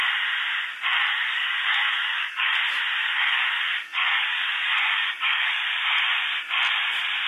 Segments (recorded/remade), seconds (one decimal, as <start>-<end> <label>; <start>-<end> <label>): 0.0-1.2 recorded; 1.2-2.5 remade; 2.5-3.0 recorded; 3.0-5.6 remade; 5.6-7.3 recorded